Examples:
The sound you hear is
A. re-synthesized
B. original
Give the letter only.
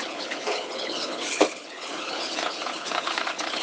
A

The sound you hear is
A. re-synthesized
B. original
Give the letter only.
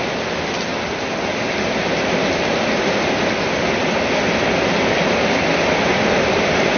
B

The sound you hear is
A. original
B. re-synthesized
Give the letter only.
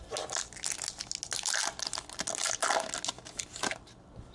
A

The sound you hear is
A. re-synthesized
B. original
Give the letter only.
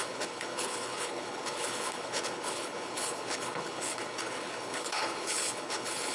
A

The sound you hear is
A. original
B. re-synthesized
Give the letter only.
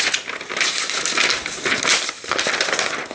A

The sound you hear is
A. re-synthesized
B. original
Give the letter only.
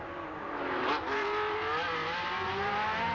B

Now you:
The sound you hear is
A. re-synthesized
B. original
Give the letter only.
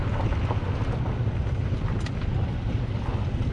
B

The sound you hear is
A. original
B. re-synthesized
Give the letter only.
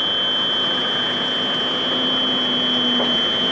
A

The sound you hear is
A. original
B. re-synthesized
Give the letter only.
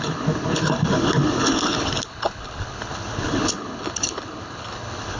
B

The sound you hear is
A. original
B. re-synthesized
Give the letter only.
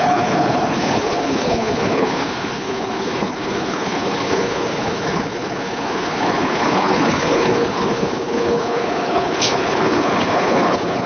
B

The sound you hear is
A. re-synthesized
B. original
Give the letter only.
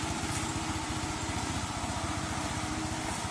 B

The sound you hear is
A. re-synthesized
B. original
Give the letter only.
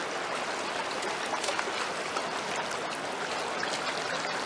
B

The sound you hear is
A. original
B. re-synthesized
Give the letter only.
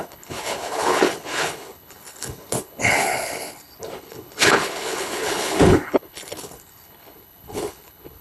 B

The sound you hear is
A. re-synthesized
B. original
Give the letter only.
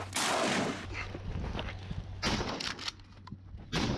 B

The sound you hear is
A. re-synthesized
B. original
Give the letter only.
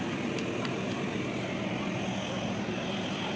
B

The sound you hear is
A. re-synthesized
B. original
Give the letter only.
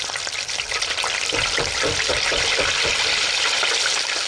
B